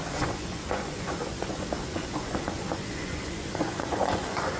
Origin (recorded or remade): remade